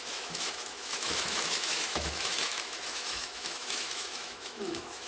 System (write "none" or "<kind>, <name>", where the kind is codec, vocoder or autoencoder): autoencoder, DAC-VAE